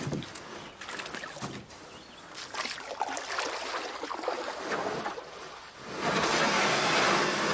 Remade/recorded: recorded